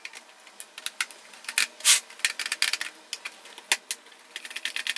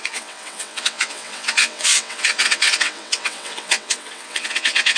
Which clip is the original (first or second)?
first